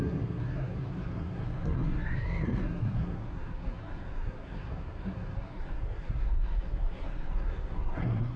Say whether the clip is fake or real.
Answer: fake